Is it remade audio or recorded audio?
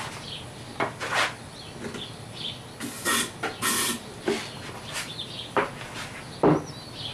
recorded